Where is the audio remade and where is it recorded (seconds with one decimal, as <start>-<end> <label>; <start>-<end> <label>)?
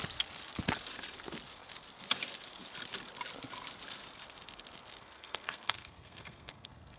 0.0-5.0 recorded; 5.0-7.0 remade